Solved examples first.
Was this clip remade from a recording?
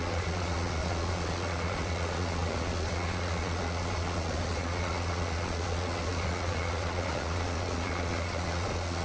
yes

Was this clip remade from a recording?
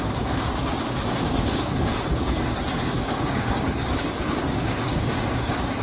yes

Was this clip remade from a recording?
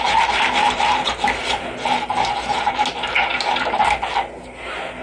no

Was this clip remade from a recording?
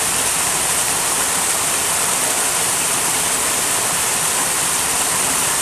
no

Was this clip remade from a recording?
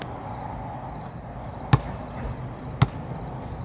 no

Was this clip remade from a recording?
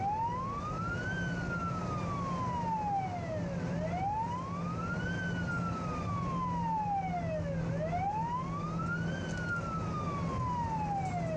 no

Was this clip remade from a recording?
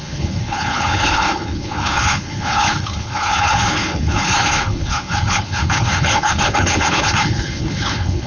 yes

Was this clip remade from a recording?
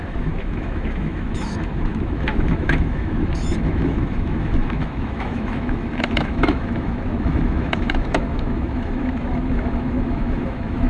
yes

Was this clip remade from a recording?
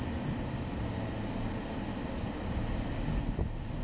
no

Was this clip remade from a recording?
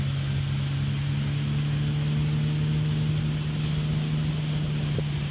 no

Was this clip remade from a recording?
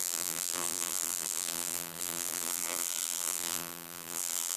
yes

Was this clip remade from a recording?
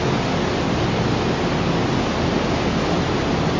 no